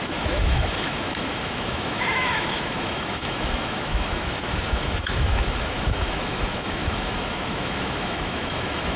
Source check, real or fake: fake